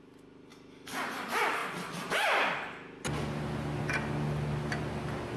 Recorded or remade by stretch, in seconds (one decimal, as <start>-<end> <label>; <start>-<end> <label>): 0.0-5.4 recorded